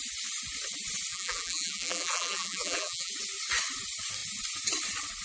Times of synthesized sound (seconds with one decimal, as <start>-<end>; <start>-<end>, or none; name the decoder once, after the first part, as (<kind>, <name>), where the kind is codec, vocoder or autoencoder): 1.1-3.1 (vocoder, BigVGAN v2)